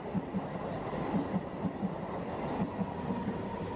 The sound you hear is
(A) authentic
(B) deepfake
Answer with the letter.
A